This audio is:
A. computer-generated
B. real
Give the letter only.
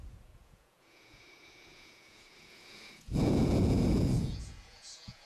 A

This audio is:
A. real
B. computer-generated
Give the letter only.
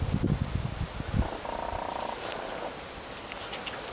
A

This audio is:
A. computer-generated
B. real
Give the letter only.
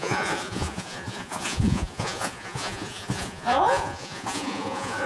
A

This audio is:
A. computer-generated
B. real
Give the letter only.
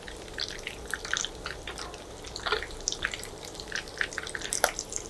B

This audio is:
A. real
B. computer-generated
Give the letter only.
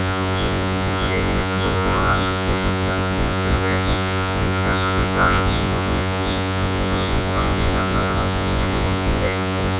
B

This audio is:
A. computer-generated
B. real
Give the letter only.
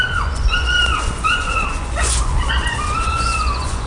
A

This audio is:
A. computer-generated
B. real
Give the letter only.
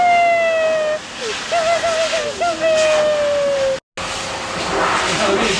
B